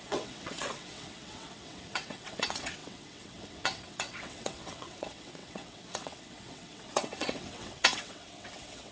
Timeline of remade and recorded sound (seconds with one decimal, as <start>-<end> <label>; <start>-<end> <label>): 0.0-8.9 remade